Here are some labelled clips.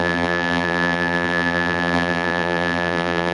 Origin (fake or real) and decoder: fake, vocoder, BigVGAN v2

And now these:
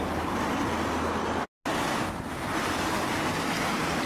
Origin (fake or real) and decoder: real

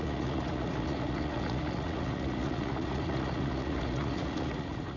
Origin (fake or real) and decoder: fake, vocoder, Vocos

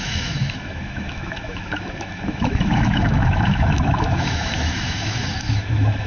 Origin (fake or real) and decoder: fake, autoencoder, DAC-VAE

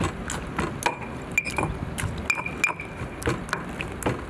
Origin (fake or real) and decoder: real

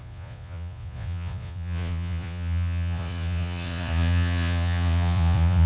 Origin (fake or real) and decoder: fake, vocoder, Vocos